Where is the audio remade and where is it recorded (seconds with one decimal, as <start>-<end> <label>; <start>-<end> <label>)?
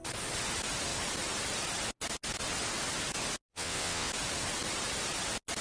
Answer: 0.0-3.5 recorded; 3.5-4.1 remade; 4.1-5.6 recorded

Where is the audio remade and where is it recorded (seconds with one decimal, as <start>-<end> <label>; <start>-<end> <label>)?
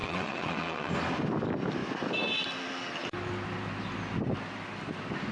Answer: 0.0-0.9 remade; 0.9-5.3 recorded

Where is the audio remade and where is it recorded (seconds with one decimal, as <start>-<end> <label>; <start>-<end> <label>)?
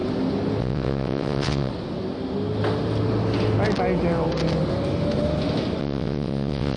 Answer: 0.0-0.6 recorded; 0.6-1.7 remade; 1.7-5.8 recorded; 5.8-6.8 remade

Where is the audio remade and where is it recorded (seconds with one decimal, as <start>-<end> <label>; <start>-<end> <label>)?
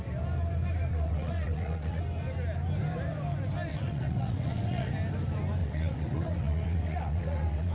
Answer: 0.0-0.9 recorded; 0.9-2.0 remade; 2.0-3.7 recorded; 3.7-4.9 remade; 4.9-5.6 recorded; 5.6-7.7 remade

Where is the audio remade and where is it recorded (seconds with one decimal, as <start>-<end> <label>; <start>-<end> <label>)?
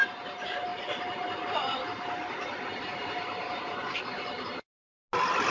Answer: 0.0-5.5 recorded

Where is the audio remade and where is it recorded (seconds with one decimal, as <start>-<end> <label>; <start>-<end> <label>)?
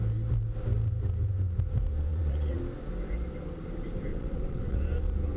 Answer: 0.0-2.1 recorded; 2.1-2.6 remade; 2.6-4.1 recorded; 4.1-4.8 remade; 4.8-5.4 recorded